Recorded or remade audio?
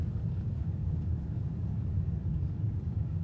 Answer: remade